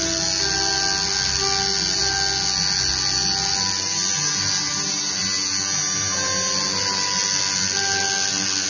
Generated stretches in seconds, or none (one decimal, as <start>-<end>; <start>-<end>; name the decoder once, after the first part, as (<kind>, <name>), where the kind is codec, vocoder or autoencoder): none